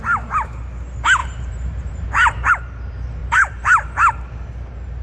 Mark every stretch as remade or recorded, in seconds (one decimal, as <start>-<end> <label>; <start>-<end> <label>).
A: 0.0-1.2 recorded; 1.2-2.5 remade; 2.5-3.2 recorded; 3.2-4.1 remade; 4.1-5.0 recorded